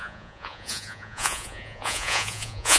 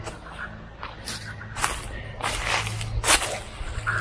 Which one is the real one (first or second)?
second